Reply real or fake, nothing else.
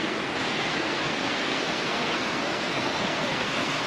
fake